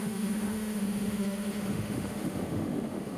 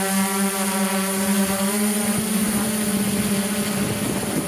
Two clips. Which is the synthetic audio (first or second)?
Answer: first